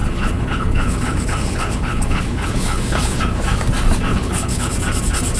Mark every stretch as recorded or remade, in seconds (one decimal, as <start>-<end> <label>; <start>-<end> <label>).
0.0-3.2 remade; 3.2-4.1 recorded; 4.1-4.7 remade; 4.7-5.4 recorded